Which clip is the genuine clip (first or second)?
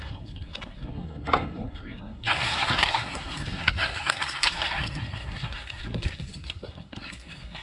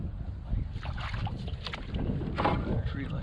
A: second